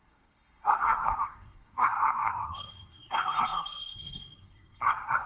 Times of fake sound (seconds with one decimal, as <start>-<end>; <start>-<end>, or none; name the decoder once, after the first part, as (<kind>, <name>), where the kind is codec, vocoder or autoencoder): 0.0-5.3 (codec, SNAC)